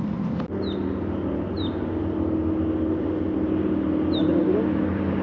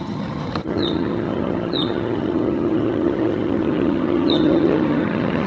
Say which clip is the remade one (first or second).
second